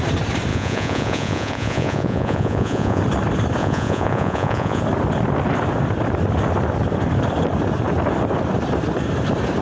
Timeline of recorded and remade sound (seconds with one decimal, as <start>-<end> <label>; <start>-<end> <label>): 0.0-0.5 recorded; 0.5-3.0 remade; 3.0-3.6 recorded; 3.6-4.8 remade; 4.8-9.6 recorded